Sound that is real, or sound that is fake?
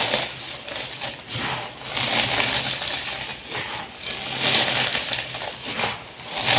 real